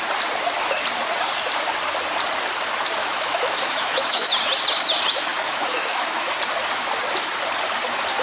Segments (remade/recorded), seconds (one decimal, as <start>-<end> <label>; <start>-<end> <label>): 0.0-3.0 recorded; 3.0-4.3 remade; 4.3-5.3 recorded; 5.3-6.3 remade; 6.3-8.2 recorded